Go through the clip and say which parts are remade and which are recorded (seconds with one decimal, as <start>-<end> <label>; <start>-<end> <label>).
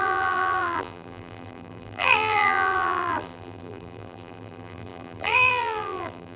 0.0-6.4 remade